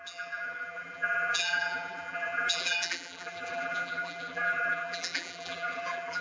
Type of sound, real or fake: fake